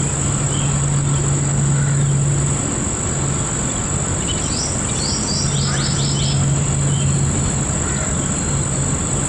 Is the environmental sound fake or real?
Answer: real